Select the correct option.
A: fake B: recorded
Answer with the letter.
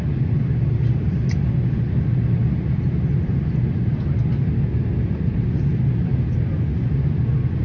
B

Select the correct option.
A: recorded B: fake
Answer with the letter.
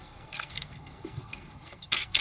B